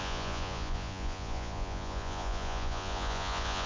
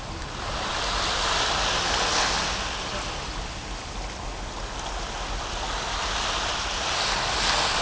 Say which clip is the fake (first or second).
first